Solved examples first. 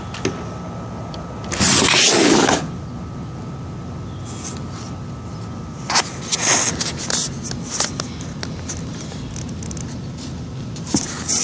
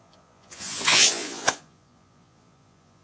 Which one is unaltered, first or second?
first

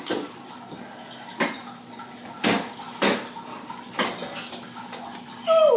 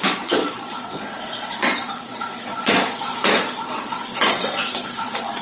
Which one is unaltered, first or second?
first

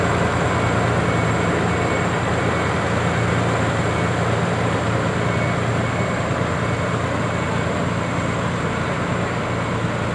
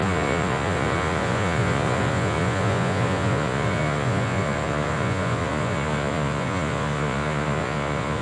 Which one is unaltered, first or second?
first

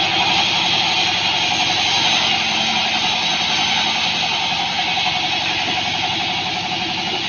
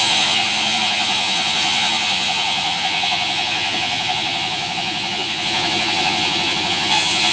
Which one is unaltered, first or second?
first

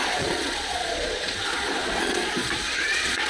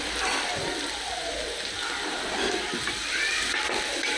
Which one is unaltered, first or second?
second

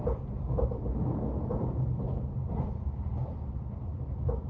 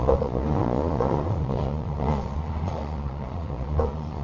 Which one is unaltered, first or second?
first